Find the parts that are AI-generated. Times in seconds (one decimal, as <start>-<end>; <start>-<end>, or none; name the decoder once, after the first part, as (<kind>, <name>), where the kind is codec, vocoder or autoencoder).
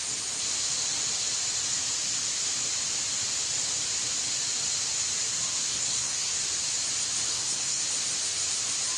5.7-6.4 (codec, SNAC); 7.3-7.8